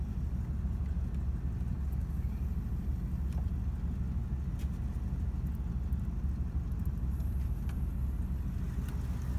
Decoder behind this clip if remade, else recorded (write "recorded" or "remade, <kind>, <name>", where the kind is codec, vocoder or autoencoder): recorded